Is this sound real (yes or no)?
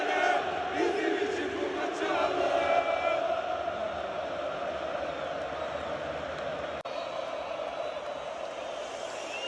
yes